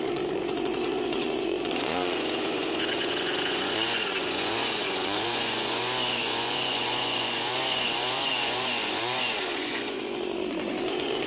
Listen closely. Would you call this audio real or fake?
fake